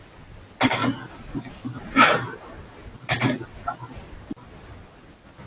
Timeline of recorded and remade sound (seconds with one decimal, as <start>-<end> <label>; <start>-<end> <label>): 0.0-5.5 recorded